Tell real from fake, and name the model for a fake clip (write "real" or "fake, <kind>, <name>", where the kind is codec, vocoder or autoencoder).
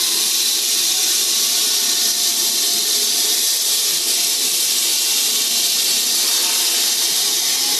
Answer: real